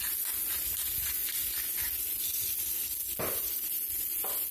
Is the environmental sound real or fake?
real